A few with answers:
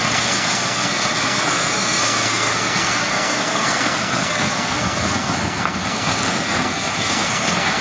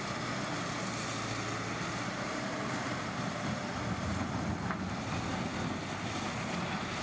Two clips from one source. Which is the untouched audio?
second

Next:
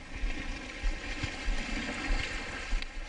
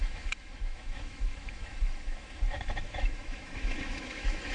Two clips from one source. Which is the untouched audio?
first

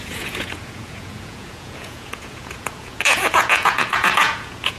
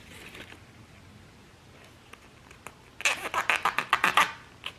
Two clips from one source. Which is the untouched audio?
second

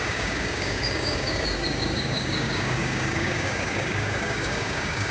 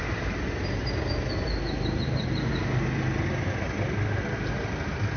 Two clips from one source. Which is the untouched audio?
second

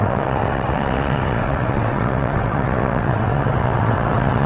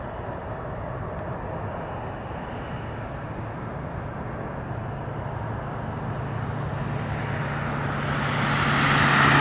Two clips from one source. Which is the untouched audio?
second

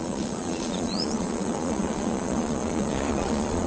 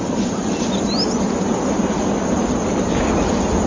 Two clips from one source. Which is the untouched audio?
second